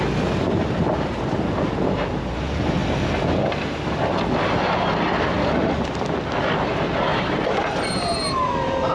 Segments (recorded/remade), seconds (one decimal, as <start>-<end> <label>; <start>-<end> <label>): 0.0-7.1 recorded; 7.1-8.9 remade